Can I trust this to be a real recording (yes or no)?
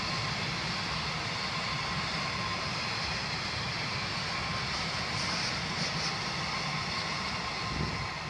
yes